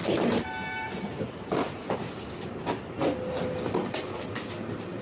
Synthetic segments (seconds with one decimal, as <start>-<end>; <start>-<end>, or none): none